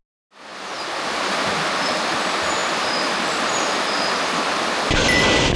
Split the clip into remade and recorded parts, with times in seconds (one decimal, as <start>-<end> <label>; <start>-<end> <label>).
0.0-2.6 recorded; 2.6-5.6 remade